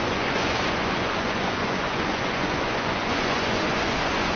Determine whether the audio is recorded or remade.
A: remade